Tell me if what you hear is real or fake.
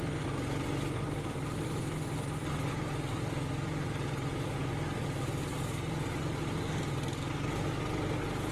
real